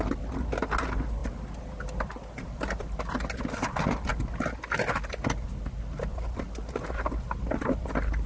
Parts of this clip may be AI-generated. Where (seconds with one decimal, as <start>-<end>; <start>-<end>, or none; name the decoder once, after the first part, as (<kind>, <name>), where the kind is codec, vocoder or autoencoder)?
none